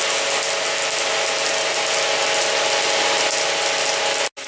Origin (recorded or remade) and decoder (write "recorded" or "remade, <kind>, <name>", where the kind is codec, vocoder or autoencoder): recorded